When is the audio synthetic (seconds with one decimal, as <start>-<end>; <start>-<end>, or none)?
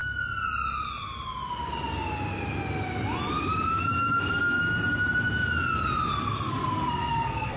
3.7-4.6; 6.3-7.6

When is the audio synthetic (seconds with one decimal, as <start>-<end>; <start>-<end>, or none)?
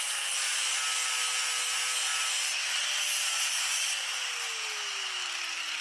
none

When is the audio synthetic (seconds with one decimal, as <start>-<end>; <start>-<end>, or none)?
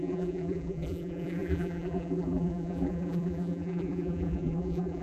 0.0-5.0